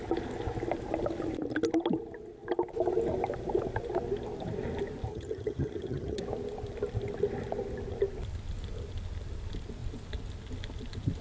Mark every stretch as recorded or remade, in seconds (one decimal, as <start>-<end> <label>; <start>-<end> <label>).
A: 0.0-5.1 recorded; 5.1-6.2 remade; 6.2-11.2 recorded